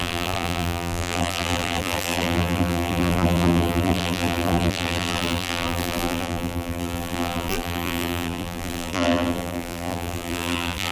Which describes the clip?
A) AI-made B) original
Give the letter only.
A